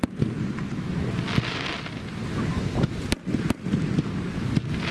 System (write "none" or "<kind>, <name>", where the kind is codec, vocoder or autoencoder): none